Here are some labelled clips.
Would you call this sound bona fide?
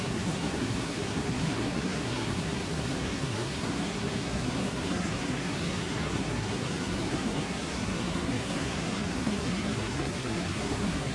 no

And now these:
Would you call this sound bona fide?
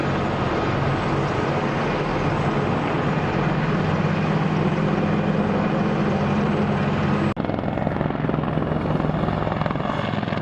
yes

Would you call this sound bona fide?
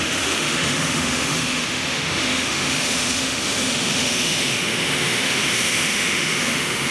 no